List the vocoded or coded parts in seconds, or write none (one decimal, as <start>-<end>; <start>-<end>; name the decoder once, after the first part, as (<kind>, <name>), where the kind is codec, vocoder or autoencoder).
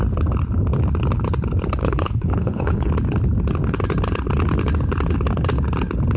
1.8-2.9 (codec, HILCodec)